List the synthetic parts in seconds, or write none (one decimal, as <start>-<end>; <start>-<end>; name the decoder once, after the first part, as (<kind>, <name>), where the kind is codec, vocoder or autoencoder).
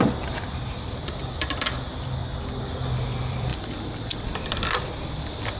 0.0-2.2 (vocoder, BigVGAN v2); 3.1-5.6